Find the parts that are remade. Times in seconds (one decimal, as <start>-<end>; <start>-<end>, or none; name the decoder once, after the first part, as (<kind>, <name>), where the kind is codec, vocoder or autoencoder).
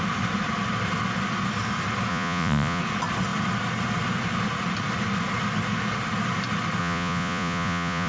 2.1-2.8 (vocoder, Vocos); 6.8-8.1